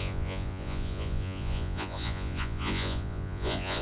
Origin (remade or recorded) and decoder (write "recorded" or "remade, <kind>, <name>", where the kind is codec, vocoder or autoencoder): remade, vocoder, Vocos